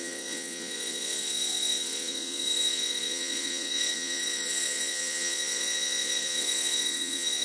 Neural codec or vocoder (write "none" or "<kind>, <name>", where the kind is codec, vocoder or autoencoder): vocoder, Vocos